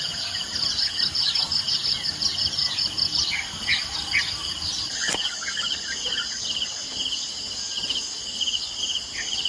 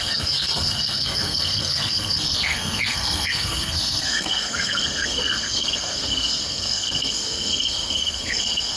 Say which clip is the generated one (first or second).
second